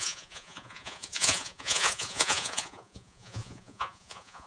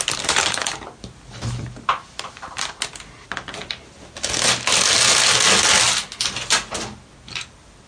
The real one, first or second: second